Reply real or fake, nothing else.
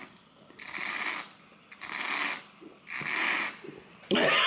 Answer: real